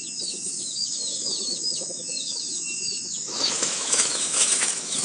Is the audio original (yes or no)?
no